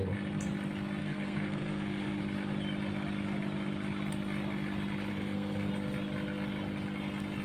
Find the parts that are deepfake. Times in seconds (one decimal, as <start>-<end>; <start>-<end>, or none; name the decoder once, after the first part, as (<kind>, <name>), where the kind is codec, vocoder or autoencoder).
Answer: 1.0-2.2 (codec, SNAC); 5.1-5.7